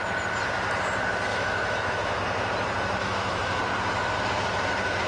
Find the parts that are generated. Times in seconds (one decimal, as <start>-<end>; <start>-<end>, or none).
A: 1.3-2.2; 3.0-3.6